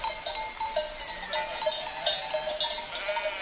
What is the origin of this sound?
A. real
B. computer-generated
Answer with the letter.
A